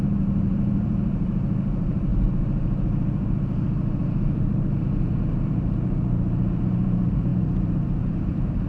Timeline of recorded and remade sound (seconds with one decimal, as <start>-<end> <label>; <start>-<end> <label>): 0.0-8.7 remade

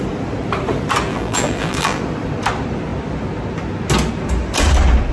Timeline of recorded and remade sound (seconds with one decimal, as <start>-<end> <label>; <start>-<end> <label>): 0.0-1.1 recorded; 1.1-2.0 remade; 2.0-5.1 recorded

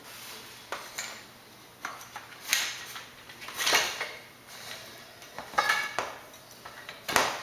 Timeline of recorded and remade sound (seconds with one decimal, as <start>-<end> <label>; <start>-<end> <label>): 0.0-7.4 recorded

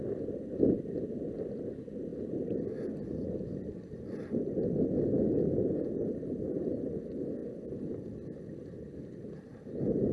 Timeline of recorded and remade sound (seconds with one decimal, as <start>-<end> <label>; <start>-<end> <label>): 0.0-10.1 recorded

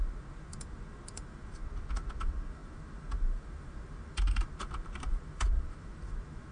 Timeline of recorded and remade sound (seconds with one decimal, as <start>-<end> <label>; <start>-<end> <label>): 0.0-1.6 remade; 1.6-2.2 recorded; 2.2-6.5 remade